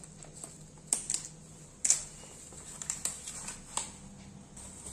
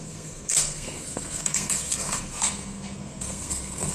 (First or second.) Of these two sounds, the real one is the first